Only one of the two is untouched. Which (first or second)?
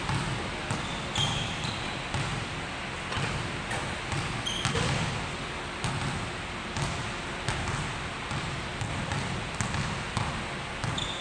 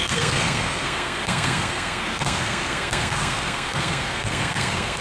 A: first